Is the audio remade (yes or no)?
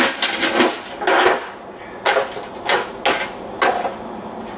no